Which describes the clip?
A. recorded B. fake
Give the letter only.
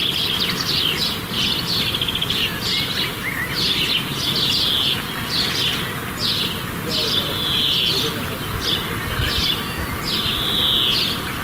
A